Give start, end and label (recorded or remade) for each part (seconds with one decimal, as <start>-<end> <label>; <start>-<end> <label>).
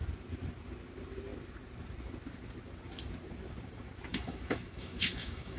0.0-4.1 recorded; 4.1-5.6 remade